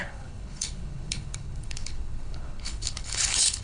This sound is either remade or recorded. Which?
remade